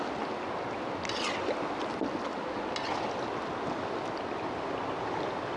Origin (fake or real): real